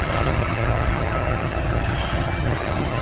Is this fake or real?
fake